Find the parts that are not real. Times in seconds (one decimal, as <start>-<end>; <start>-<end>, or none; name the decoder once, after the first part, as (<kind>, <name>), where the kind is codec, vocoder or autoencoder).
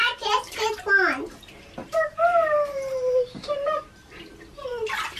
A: 0.0-0.8 (vocoder, BigVGAN v2); 1.8-4.2